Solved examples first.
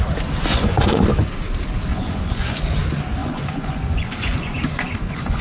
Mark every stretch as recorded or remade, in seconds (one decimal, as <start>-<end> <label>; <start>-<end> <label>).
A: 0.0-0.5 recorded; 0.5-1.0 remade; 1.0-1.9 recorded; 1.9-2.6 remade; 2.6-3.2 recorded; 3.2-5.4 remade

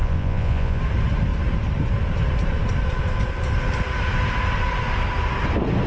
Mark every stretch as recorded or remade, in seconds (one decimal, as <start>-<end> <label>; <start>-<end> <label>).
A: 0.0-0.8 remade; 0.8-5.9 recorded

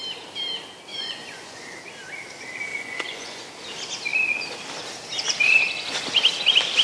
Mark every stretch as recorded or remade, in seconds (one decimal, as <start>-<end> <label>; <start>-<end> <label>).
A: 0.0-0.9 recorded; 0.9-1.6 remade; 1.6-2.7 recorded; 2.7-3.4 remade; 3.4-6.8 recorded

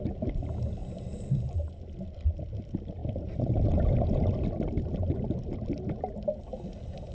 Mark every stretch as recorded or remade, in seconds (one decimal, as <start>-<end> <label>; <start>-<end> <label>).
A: 0.0-7.1 recorded

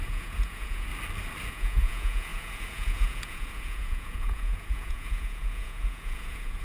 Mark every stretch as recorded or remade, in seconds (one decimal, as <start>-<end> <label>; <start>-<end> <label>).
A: 0.0-0.9 remade; 0.9-1.5 recorded; 1.5-6.6 remade

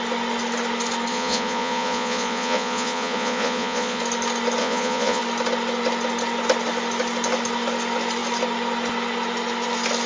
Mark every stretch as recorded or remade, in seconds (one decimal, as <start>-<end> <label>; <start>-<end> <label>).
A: 0.0-1.1 recorded; 1.1-4.0 remade; 4.0-4.6 recorded; 4.6-5.2 remade; 5.2-10.1 recorded

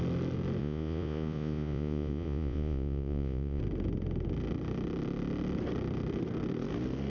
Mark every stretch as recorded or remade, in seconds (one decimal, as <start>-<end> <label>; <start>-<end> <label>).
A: 0.0-0.6 recorded; 0.6-3.6 remade; 3.6-7.1 recorded

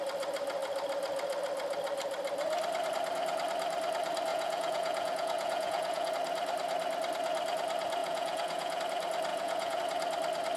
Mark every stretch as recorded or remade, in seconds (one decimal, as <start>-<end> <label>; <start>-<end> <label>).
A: 0.0-4.3 recorded; 4.3-6.1 remade; 6.1-8.0 recorded; 8.0-8.8 remade; 8.8-9.3 recorded; 9.3-9.8 remade; 9.8-10.6 recorded